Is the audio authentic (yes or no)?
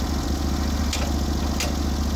yes